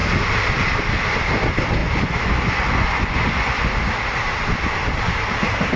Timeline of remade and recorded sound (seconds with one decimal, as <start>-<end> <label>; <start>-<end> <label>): 0.0-1.8 recorded; 1.8-3.9 remade; 3.9-5.8 recorded